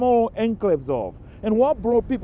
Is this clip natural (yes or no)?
yes